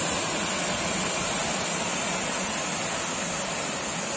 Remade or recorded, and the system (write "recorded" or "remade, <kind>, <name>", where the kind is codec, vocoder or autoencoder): recorded